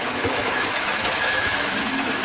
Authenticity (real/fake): fake